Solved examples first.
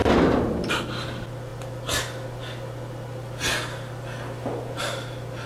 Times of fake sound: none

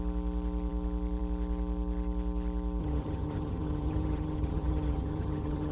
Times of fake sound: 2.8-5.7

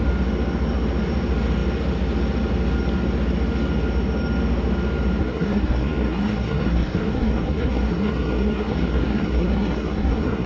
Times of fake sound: 5.2-10.5

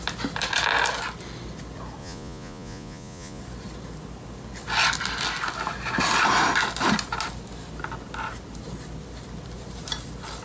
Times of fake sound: 2.0-3.4

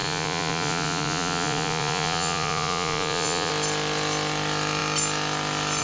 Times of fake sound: 0.0-3.5

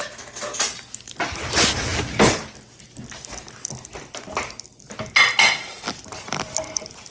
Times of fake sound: none

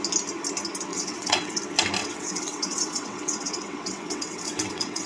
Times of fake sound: 0.9-1.6; 2.0-5.1